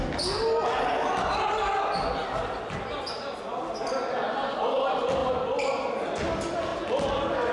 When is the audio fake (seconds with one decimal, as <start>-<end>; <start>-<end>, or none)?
none